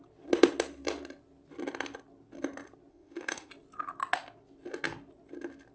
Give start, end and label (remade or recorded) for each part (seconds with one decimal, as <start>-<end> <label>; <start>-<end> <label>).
0.0-2.9 recorded; 2.9-3.5 remade; 3.5-5.7 recorded